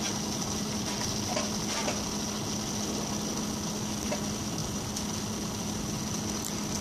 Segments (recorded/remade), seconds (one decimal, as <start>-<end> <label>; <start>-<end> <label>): 0.0-6.8 recorded